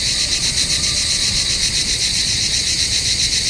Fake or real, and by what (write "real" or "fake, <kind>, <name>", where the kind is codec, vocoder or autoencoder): fake, vocoder, Vocos